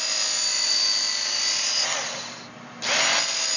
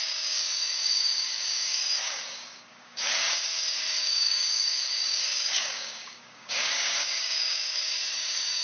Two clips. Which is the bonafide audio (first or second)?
first